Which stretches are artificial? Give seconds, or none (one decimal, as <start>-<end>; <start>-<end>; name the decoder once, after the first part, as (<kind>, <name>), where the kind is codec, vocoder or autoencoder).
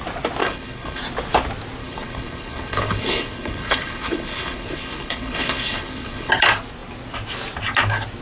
0.4-1.0 (codec, HILCodec); 1.8-6.3